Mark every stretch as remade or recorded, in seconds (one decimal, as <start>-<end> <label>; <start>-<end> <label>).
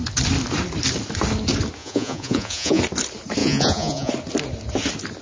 0.0-1.8 recorded; 1.8-2.8 remade; 2.8-3.4 recorded; 3.4-4.1 remade; 4.1-5.2 recorded